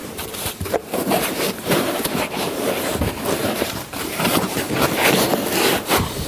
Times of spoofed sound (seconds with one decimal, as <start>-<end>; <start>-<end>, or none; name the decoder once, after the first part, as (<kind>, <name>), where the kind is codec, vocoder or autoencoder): 0.0-3.0 (vocoder, BigVGAN v2); 3.4-4.7